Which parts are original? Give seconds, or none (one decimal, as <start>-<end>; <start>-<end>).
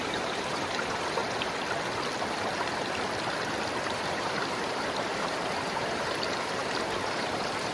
1.2-4.0